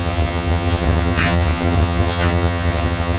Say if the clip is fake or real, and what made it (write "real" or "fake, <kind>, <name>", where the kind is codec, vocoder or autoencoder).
fake, vocoder, HiFi-GAN